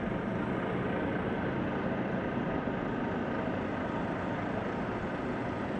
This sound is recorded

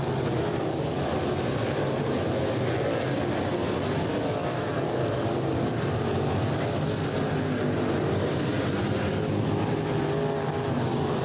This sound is recorded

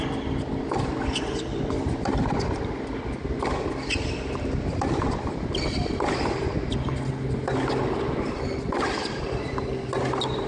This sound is recorded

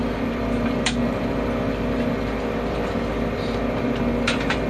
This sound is remade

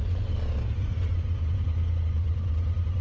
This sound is recorded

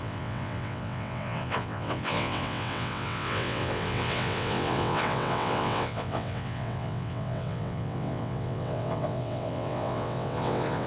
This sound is remade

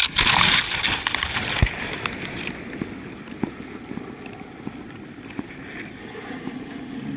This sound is recorded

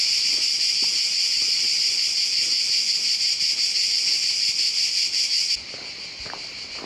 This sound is recorded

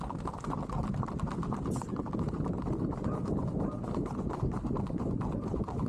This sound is recorded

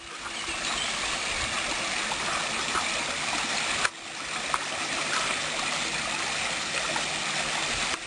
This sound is recorded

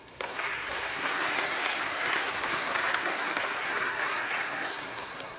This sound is remade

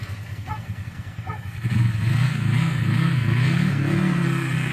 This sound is remade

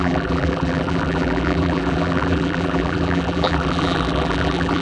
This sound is remade